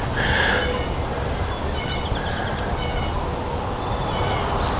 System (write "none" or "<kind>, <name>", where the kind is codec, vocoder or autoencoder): none